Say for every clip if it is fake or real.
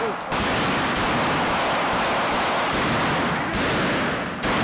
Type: real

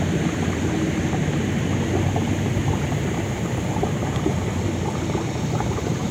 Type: real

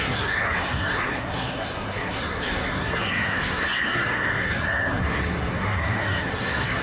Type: fake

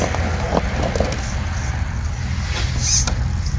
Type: real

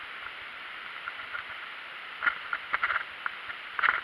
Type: fake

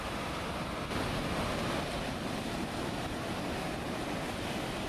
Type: real